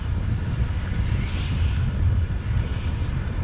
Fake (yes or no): no